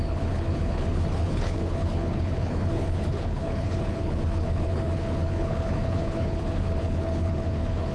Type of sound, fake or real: fake